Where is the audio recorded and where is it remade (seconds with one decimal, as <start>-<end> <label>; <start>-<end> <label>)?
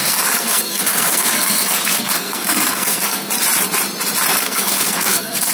0.0-3.3 remade; 3.3-4.3 recorded; 4.3-5.5 remade